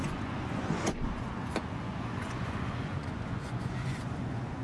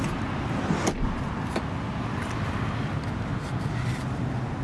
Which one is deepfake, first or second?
first